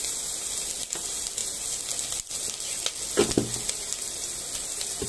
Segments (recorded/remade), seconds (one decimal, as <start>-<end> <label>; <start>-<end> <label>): 0.0-5.1 recorded

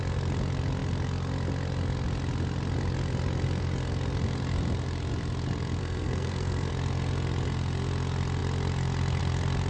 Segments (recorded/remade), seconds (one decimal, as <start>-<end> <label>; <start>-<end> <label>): 0.0-5.8 recorded; 5.8-6.7 remade; 6.7-9.7 recorded

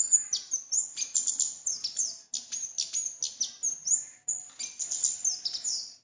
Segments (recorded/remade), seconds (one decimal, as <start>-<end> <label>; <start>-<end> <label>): 0.0-6.0 recorded

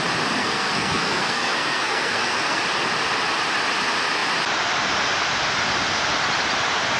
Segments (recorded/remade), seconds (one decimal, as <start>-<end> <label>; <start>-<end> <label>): 0.0-0.4 recorded; 0.4-2.6 remade; 2.6-7.0 recorded

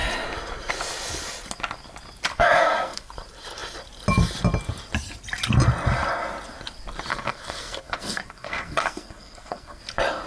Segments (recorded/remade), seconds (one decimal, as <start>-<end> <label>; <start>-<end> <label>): 0.0-2.3 recorded; 2.3-3.1 remade; 3.1-7.1 recorded; 7.1-9.8 remade; 9.8-10.3 recorded

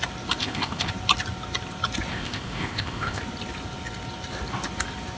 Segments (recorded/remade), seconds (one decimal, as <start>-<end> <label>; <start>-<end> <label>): 0.0-0.4 recorded; 0.4-0.9 remade; 0.9-2.1 recorded; 2.1-3.2 remade; 3.2-5.2 recorded

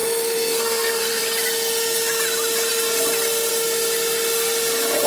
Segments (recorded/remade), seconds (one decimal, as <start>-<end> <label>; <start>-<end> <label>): 0.0-1.2 remade; 1.2-5.1 recorded

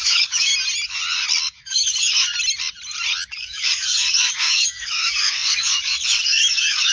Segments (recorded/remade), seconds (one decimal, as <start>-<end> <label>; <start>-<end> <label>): 0.0-0.5 remade; 0.5-1.6 recorded; 1.6-2.3 remade; 2.3-3.3 recorded; 3.3-6.9 remade